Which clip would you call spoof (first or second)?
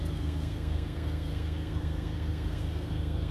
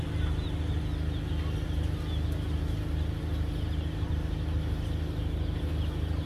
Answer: first